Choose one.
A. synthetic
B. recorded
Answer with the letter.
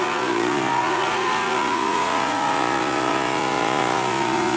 A